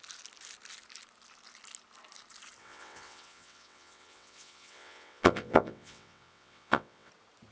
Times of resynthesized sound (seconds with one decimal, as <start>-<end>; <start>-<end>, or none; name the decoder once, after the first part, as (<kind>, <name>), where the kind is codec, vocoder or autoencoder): 2.6-7.1 (vocoder, WaveNeXt)